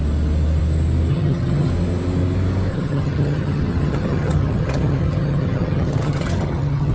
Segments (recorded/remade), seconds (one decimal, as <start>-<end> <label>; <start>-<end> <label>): 0.0-1.1 recorded; 1.1-1.7 remade; 1.7-2.7 recorded; 2.7-6.9 remade